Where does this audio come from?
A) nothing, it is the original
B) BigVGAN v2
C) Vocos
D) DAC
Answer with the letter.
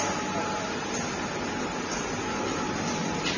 A